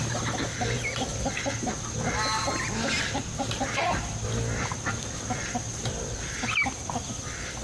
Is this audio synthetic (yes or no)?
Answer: no